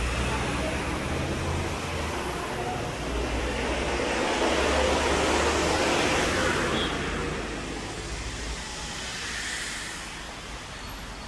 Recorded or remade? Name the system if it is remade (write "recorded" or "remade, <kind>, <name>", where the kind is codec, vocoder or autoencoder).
recorded